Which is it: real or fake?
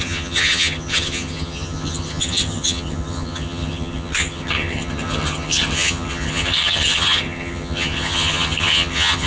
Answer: fake